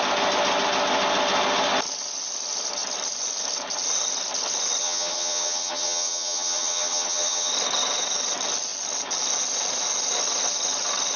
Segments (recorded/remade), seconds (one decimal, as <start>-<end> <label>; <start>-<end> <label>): 0.0-4.8 recorded; 4.8-7.5 remade; 7.5-11.2 recorded